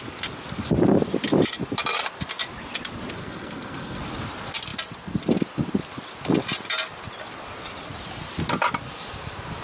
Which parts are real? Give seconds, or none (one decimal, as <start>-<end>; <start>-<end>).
0.0-3.2; 4.0-9.6